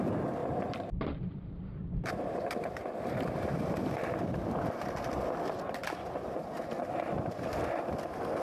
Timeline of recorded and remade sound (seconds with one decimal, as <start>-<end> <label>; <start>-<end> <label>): 0.0-0.4 recorded; 0.4-4.6 remade; 4.6-8.4 recorded